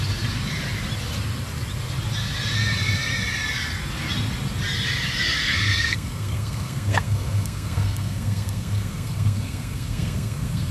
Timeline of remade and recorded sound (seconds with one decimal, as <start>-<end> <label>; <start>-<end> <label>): 0.0-5.4 recorded; 5.4-10.7 remade